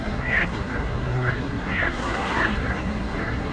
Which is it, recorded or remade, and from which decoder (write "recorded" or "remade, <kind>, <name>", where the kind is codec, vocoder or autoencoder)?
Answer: remade, codec, SNAC